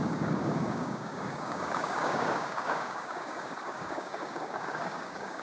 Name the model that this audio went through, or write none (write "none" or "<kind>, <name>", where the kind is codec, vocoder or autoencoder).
codec, DAC